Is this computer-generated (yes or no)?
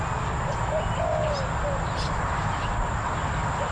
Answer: no